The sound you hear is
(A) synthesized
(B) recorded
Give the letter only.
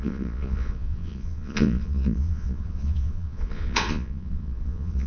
A